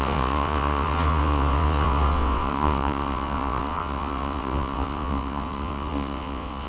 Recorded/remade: remade